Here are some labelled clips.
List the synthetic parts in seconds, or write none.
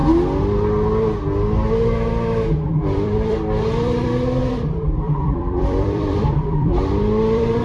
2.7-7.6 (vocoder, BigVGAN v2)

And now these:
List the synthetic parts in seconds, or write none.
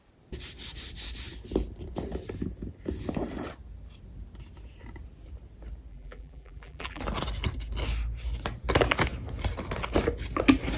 5.9-7.0 (vocoder, BigVGAN v2)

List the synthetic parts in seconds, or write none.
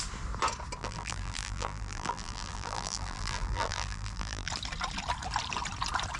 0.8-4.5 (vocoder, BigVGAN v2)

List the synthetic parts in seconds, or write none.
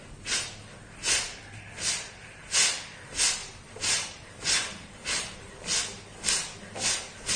3.4-5.5 (vocoder, BigVGAN v2)